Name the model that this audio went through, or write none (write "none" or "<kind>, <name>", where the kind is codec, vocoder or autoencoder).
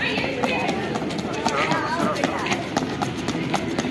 none